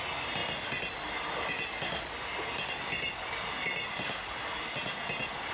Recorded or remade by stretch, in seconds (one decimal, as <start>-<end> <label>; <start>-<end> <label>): 0.0-5.5 recorded